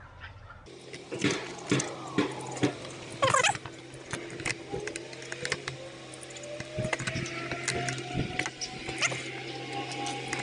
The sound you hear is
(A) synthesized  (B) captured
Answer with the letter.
B